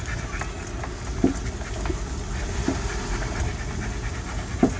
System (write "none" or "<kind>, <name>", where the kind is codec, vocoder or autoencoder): none